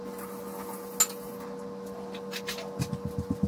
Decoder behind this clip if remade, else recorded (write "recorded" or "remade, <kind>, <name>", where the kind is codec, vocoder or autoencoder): recorded